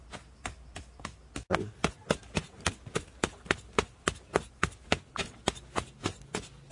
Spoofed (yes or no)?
no